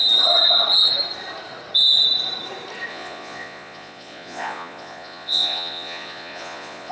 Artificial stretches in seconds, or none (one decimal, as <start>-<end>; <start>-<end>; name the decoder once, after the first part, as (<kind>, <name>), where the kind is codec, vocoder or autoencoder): 2.9-6.9 (vocoder, Vocos)